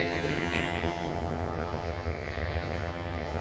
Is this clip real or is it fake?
fake